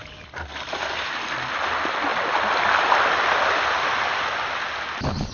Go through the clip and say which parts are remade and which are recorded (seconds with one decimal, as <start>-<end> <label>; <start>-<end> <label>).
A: 0.0-5.3 recorded